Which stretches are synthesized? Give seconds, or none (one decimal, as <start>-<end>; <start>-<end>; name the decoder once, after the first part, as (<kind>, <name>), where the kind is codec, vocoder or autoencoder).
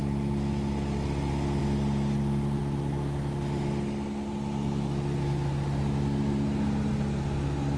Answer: none